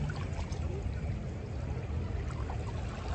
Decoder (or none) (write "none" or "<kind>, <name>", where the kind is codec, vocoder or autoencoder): none